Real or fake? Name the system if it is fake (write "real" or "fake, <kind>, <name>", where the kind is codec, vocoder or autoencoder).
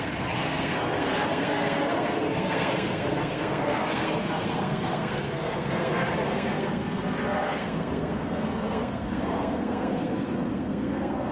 fake, codec, SNAC